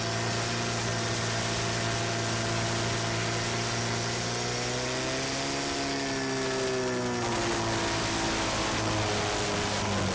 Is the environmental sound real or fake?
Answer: real